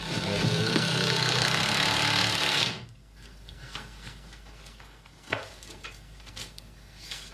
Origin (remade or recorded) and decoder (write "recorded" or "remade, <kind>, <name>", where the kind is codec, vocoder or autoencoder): remade, codec, SNAC